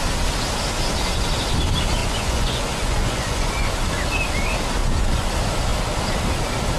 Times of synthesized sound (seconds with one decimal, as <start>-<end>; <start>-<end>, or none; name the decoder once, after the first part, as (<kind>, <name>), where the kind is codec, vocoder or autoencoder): 2.0-3.7 (vocoder, Vocos); 4.8-5.3